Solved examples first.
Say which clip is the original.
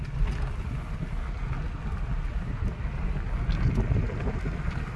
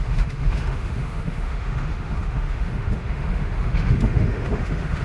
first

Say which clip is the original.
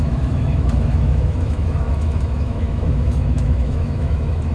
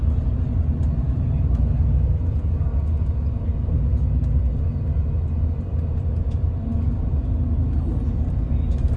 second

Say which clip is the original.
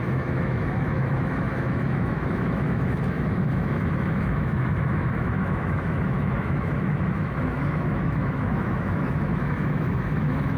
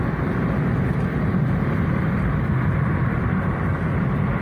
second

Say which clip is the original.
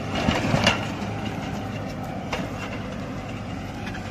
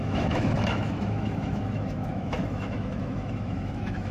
first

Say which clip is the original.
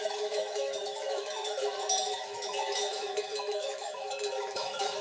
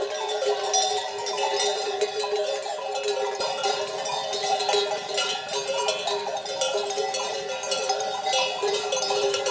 second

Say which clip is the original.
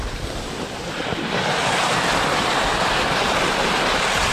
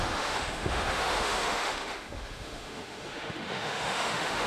first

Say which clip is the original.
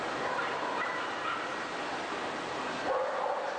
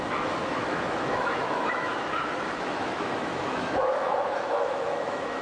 first